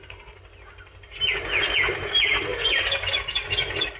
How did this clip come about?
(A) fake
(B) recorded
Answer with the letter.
B